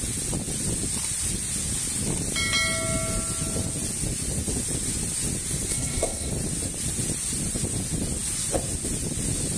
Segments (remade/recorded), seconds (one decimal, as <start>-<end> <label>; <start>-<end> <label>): 0.0-5.7 recorded; 5.7-6.3 remade; 6.3-9.6 recorded